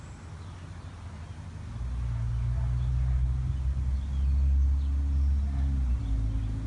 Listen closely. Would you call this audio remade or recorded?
recorded